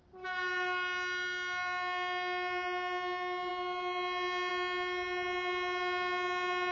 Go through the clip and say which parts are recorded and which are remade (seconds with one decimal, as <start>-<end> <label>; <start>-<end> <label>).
0.0-6.7 recorded